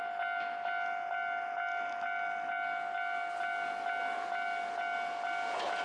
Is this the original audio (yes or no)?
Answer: yes